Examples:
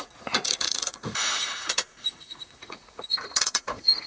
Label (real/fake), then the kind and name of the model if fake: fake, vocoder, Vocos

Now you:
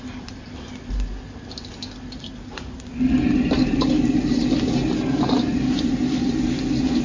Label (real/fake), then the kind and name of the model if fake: real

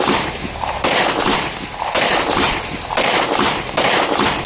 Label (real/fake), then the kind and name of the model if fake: fake, vocoder, BigVGAN v2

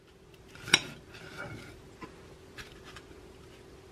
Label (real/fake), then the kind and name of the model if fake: real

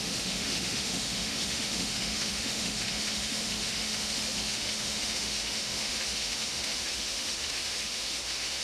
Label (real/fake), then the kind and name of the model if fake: fake, autoencoder, DAC-VAE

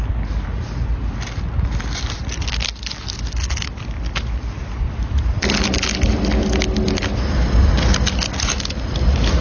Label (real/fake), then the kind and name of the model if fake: real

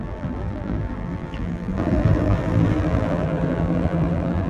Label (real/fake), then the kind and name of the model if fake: fake, vocoder, BigVGAN v2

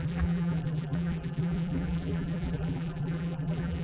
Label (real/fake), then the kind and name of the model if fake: fake, vocoder, BigVGAN v2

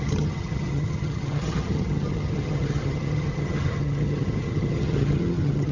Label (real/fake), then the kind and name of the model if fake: fake, vocoder, HiFi-GAN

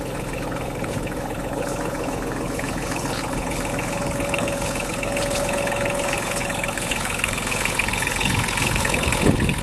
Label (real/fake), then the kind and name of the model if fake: fake, codec, HILCodec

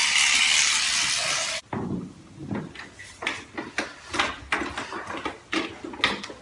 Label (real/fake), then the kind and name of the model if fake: real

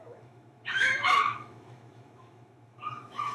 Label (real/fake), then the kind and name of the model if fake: fake, autoencoder, DAC-VAE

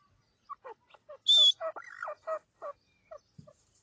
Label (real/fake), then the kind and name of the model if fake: real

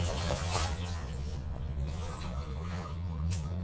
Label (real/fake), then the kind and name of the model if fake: fake, vocoder, Vocos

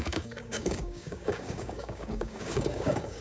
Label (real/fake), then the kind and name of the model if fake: fake, codec, DAC